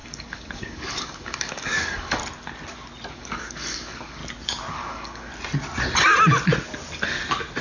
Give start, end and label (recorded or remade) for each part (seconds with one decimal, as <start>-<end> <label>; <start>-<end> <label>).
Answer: 0.0-2.2 remade; 2.2-3.1 recorded; 3.1-4.2 remade; 4.2-4.7 recorded; 4.7-5.3 remade; 5.3-7.6 recorded